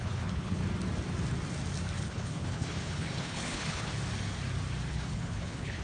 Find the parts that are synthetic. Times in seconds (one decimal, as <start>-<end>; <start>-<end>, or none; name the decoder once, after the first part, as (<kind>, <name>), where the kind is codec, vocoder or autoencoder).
0.0-0.6 (codec, HILCodec); 2.0-3.9; 4.9-5.8